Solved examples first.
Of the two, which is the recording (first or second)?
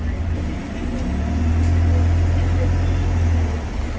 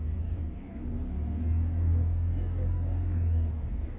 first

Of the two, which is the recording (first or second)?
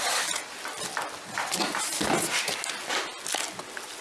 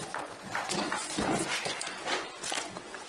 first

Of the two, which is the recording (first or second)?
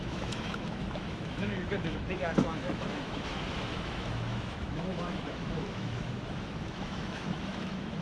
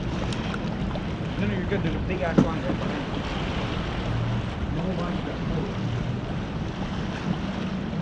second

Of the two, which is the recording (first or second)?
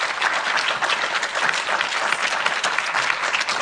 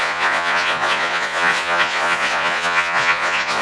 first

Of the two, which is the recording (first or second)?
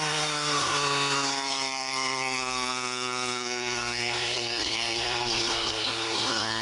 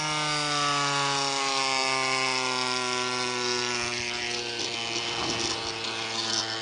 second